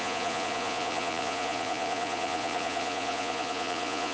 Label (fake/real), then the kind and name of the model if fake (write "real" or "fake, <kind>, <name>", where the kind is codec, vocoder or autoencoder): fake, vocoder, Vocos